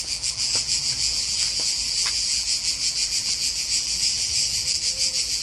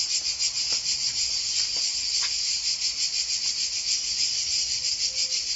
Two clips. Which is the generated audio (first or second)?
first